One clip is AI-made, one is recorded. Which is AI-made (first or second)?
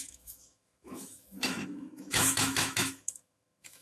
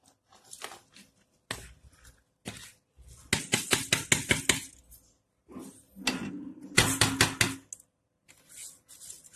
first